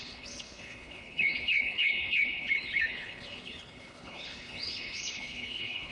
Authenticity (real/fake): fake